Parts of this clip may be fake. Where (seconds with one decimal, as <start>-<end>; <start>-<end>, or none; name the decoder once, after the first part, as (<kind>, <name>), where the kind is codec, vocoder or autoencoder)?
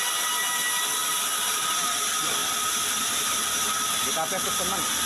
2.4-4.1 (vocoder, BigVGAN v2)